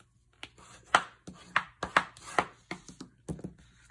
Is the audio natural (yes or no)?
yes